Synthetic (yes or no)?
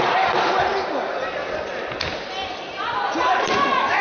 no